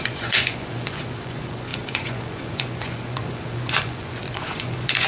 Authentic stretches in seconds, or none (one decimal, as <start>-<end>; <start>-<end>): none